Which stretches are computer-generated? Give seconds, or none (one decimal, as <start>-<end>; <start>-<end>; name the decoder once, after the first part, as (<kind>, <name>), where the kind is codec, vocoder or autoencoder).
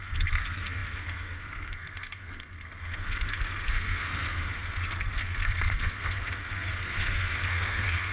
0.0-8.1 (codec, SNAC)